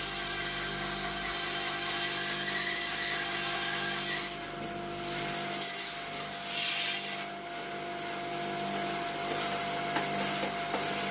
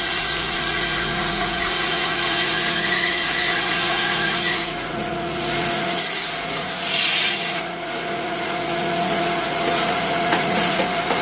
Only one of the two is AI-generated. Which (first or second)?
second